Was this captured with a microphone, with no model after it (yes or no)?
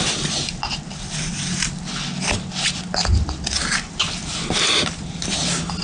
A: yes